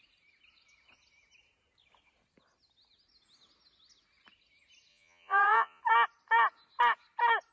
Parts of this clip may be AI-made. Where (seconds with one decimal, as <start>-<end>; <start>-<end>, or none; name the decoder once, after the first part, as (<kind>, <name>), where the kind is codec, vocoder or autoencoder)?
4.9-5.8 (vocoder, Vocos)